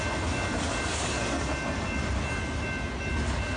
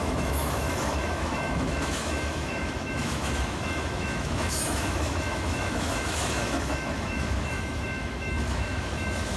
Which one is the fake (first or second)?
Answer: second